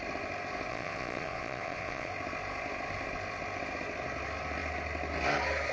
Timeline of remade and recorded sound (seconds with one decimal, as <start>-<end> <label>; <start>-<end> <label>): 0.0-0.7 recorded; 0.7-2.1 remade; 2.1-5.7 recorded

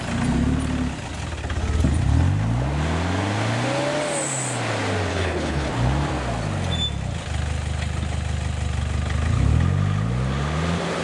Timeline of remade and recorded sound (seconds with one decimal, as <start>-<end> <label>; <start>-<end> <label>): 0.0-5.1 recorded; 5.1-5.7 remade; 5.7-11.0 recorded

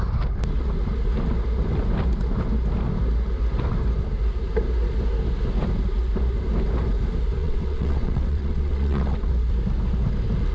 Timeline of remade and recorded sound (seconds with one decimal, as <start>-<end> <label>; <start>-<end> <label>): 0.0-7.4 recorded; 7.4-9.3 remade; 9.3-10.5 recorded

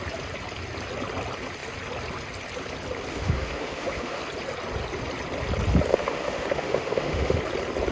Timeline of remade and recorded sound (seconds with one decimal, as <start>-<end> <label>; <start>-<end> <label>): 0.0-3.1 recorded; 3.1-4.2 remade; 4.2-5.9 recorded; 5.9-7.4 remade; 7.4-7.9 recorded